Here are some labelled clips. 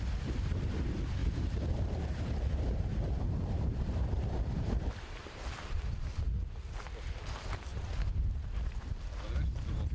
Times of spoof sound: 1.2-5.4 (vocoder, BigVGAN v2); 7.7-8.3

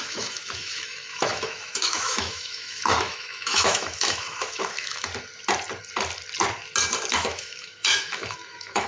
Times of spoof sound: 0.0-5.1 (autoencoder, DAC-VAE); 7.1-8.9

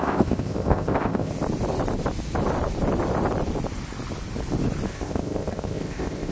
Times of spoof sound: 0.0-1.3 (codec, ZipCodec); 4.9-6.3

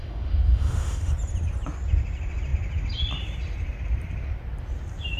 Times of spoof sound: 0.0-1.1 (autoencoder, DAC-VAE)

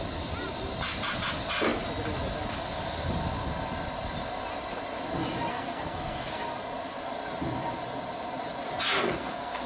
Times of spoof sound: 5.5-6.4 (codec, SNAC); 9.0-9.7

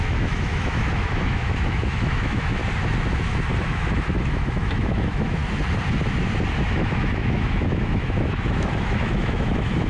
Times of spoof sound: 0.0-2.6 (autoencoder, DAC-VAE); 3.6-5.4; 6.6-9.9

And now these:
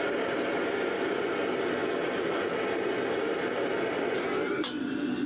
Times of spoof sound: none

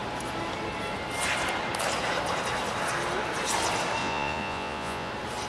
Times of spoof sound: 4.0-5.1 (vocoder, Vocos)